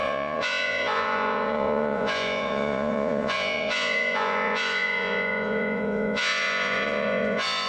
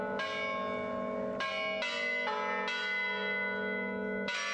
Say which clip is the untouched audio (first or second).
second